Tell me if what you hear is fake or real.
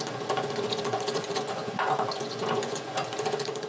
fake